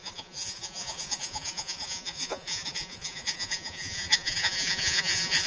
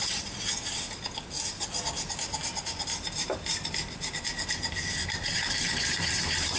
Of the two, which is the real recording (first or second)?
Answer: second